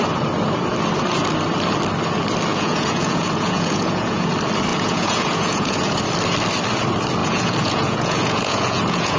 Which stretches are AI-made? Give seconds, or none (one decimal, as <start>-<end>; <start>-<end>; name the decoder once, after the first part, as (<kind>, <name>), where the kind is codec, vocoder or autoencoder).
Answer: 2.5-4.3 (vocoder, Vocos); 4.7-6.0; 7.2-9.2